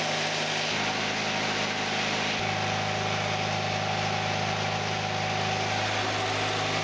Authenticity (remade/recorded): recorded